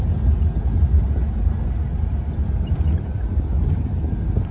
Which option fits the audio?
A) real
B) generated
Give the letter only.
A